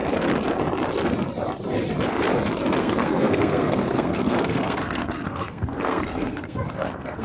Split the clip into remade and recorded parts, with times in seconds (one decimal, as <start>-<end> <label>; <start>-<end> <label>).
0.0-2.8 recorded; 2.8-7.2 remade